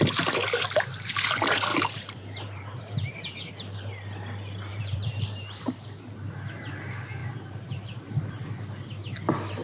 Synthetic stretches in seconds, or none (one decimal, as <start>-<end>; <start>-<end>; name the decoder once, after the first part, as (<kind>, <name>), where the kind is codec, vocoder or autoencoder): 1.7-3.5 (vocoder, BigVGAN v2); 4.7-6.3; 7.2-8.3